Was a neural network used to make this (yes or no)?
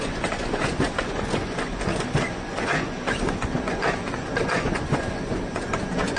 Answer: yes